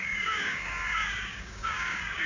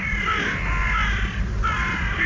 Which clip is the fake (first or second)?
first